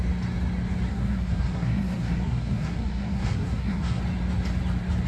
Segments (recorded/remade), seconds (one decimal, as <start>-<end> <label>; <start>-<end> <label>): 0.0-0.9 recorded; 0.9-4.0 remade; 4.0-5.1 recorded